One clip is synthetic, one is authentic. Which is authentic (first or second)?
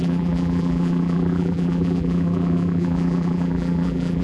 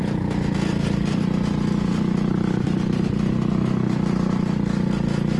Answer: second